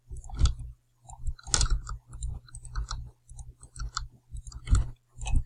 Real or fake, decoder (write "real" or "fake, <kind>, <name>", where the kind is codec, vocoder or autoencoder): real